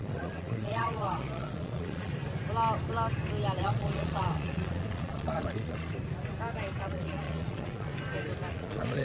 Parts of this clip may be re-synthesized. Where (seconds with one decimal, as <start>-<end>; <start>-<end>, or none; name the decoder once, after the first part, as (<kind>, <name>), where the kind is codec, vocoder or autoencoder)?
0.0-2.1 (vocoder, Vocos); 3.6-5.9; 6.8-7.9; 8.5-9.0